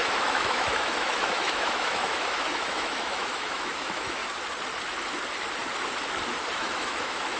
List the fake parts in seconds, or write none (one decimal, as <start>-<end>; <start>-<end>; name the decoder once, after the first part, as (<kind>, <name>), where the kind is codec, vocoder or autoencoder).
0.0-4.2 (autoencoder, DAC-VAE); 6.5-7.4